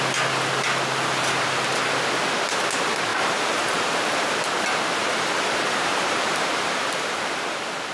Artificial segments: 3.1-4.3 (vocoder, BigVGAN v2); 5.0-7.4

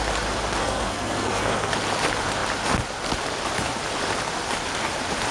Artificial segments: 0.6-1.7 (codec, SNAC)

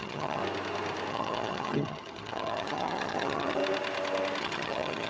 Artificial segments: 0.0-0.4 (vocoder, HiFi-GAN); 1.1-3.6; 4.4-5.1